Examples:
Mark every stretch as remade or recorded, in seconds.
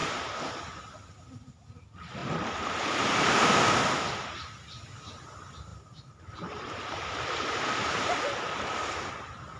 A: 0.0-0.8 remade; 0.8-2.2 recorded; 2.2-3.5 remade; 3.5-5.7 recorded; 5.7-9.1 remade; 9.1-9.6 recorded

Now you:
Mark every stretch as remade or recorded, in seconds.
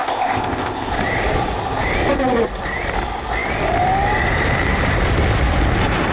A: 0.0-0.9 remade; 0.9-6.1 recorded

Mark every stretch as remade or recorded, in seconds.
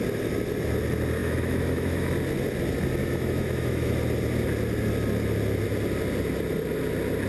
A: 0.0-1.2 recorded; 1.2-2.1 remade; 2.1-3.0 recorded; 3.0-3.9 remade; 3.9-7.3 recorded